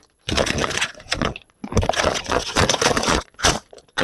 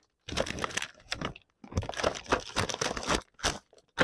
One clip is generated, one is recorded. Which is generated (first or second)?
first